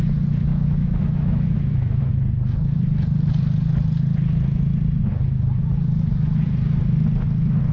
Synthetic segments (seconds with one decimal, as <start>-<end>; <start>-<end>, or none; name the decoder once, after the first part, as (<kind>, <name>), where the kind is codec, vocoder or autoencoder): 0.5-2.0 (autoencoder, DAC-VAE)